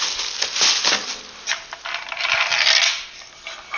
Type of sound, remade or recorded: recorded